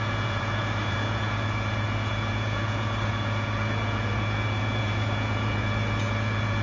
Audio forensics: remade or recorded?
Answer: remade